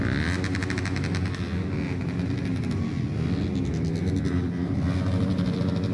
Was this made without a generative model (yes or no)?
yes